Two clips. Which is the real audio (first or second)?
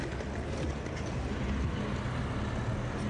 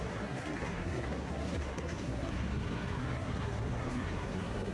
first